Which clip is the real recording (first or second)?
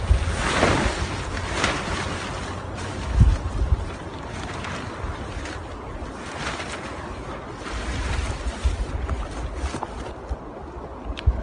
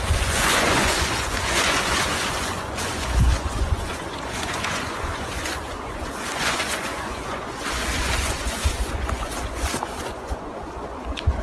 first